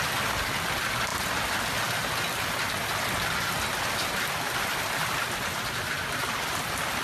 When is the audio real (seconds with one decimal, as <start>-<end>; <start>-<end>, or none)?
0.0-7.0